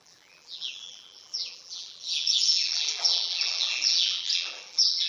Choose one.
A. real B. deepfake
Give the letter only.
B